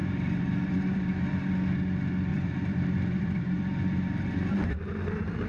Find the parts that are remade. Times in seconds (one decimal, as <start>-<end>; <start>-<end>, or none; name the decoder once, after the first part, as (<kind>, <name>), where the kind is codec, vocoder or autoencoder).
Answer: 0.0-1.5 (vocoder, BigVGAN v2); 2.3-5.1